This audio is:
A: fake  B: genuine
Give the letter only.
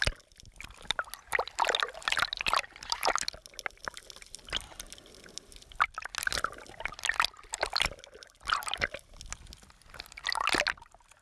B